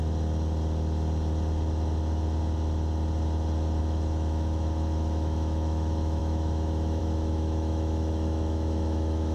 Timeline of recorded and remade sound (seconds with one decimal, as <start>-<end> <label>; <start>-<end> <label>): 0.0-3.8 recorded; 3.8-9.3 remade